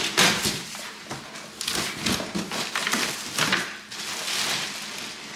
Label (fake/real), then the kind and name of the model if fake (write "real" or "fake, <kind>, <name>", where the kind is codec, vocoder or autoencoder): real